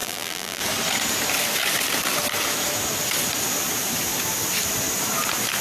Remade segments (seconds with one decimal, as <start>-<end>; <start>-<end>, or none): 0.0-0.6